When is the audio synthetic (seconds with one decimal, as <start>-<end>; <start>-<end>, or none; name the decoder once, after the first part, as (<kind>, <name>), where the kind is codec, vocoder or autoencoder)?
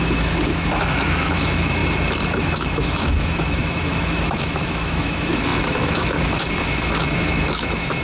0.0-1.8 (autoencoder, DAC-VAE); 2.4-8.0